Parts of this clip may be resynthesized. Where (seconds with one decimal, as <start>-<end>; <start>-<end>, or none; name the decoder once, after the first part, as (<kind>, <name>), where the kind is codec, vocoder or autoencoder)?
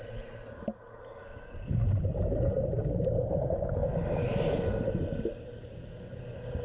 1.3-2.0 (vocoder, BigVGAN v2)